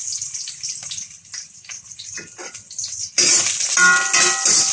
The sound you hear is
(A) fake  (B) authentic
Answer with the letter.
B